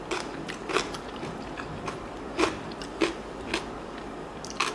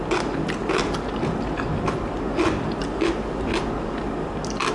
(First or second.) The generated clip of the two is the first